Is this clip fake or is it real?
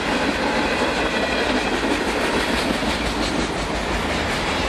real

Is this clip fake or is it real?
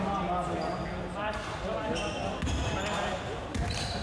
real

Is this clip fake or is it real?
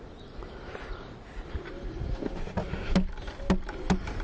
real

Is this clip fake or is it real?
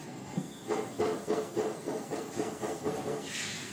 fake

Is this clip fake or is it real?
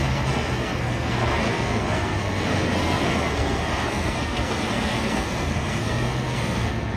fake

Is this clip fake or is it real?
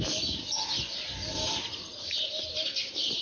real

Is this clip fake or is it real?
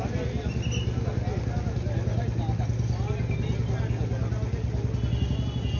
real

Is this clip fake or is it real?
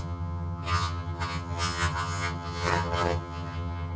fake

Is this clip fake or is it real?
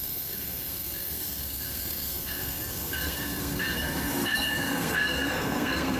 fake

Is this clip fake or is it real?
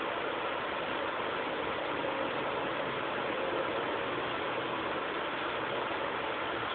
real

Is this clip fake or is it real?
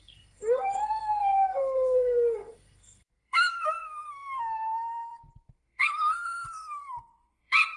fake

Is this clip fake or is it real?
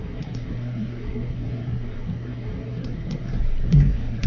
fake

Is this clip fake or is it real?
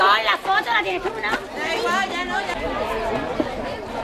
real